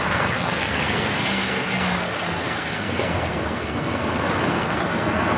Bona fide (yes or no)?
no